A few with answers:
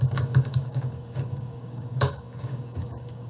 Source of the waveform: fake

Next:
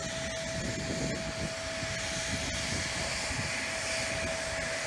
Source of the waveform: real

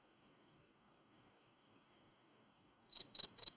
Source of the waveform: fake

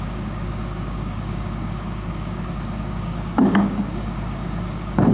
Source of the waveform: fake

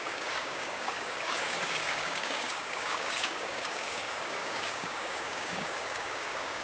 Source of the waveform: fake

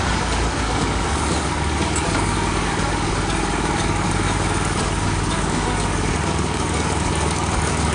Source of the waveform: fake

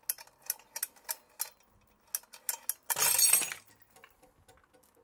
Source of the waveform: real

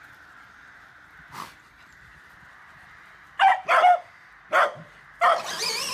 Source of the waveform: real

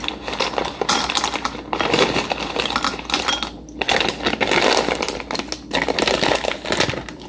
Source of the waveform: real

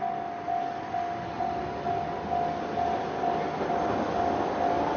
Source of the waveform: real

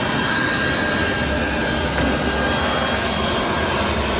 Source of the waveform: real